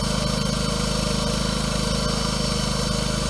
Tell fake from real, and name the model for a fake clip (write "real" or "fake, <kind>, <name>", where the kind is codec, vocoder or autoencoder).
real